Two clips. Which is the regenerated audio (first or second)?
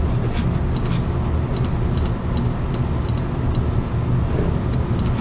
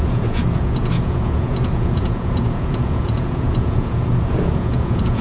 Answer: second